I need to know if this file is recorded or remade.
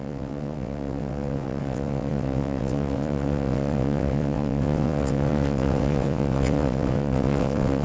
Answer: remade